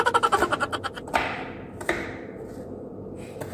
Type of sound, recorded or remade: recorded